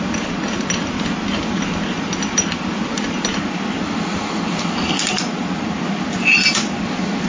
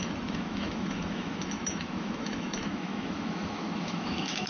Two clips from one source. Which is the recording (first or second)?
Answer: first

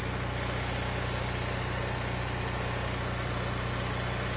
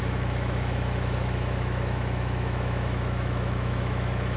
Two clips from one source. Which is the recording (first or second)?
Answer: first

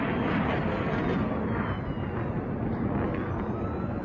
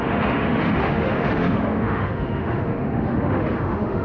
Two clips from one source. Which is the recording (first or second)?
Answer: first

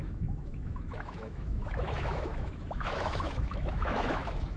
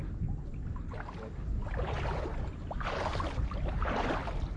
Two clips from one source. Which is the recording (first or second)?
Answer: second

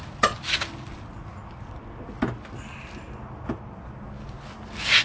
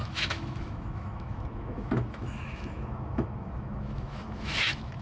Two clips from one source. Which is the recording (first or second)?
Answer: first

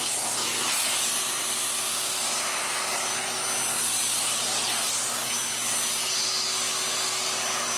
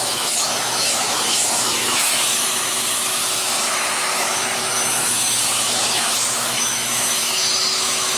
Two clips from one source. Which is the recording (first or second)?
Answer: first